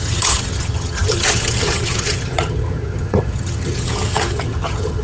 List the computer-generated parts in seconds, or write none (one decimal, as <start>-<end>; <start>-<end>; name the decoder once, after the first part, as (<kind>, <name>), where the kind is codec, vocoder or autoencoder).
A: 0.0-5.0 (vocoder, HiFi-GAN)